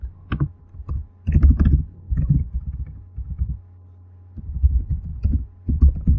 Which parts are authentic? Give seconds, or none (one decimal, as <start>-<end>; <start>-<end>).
0.0-6.2

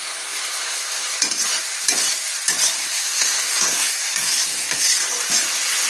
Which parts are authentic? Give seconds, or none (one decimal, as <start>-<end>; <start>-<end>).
1.1-2.8; 5.1-5.9

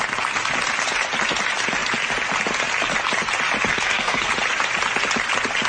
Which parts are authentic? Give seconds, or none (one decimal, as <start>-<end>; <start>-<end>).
0.0-3.7; 4.3-5.7

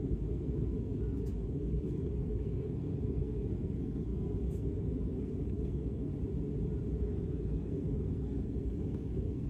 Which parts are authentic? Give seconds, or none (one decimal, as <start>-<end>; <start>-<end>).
6.1-7.0

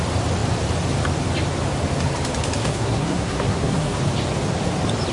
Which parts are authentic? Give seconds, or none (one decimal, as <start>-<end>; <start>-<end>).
0.0-2.6; 4.0-5.1

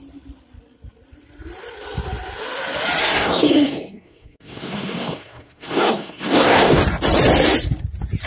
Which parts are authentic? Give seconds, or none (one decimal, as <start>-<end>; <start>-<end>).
0.0-3.0; 6.8-8.3